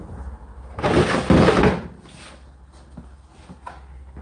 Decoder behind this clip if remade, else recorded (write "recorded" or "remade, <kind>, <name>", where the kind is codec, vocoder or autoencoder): recorded